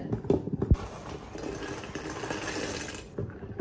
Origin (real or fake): real